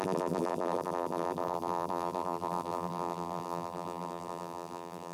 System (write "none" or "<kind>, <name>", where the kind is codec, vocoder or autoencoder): vocoder, BigVGAN v2